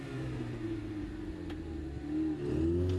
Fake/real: real